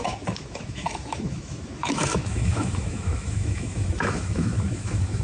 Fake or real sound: fake